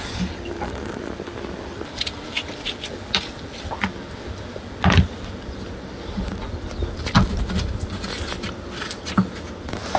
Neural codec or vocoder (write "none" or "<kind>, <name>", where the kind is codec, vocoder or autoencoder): none